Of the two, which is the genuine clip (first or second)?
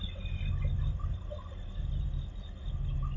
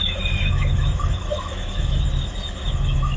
first